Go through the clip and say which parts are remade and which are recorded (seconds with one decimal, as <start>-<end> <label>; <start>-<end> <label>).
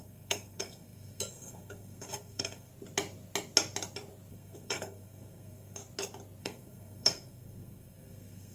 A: 0.0-2.7 remade; 2.7-4.3 recorded; 4.3-5.8 remade; 5.8-6.4 recorded; 6.4-8.5 remade